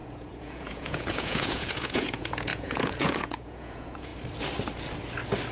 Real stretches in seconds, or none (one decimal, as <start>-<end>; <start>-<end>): 4.1-5.5